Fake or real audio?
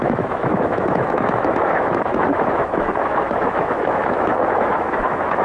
fake